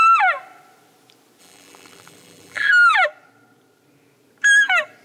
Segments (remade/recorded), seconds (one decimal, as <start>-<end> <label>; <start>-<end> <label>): 0.0-1.4 recorded; 1.4-2.7 remade; 2.7-5.0 recorded